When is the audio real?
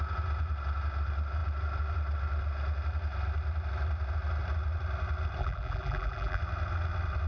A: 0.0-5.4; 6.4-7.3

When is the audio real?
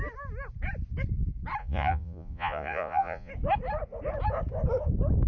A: 0.0-1.6; 3.3-5.3